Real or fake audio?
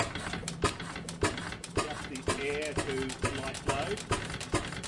real